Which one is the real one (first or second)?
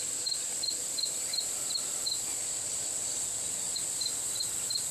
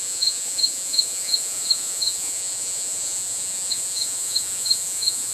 first